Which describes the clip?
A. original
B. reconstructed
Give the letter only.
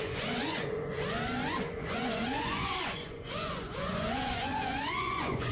B